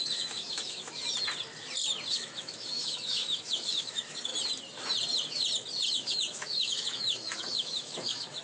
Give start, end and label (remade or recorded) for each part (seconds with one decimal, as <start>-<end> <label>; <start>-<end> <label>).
0.0-1.0 remade; 1.0-2.1 recorded; 2.1-4.3 remade; 4.3-5.9 recorded; 5.9-8.4 remade